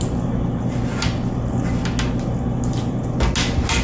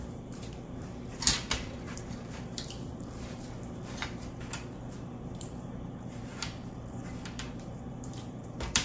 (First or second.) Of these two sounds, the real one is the first